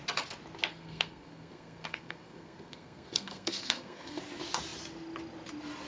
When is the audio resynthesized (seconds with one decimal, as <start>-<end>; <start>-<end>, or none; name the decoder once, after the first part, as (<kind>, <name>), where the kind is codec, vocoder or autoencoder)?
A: 0.7-4.2 (codec, SNAC)